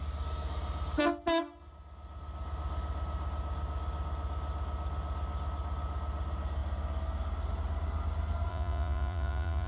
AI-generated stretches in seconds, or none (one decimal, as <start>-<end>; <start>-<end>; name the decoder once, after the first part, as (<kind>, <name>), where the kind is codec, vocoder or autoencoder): 8.5-9.7 (vocoder, Vocos)